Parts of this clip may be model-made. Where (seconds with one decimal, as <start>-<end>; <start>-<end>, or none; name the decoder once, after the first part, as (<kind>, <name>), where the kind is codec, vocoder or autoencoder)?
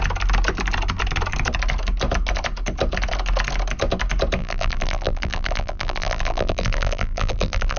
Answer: 4.4-7.8 (vocoder, BigVGAN v2)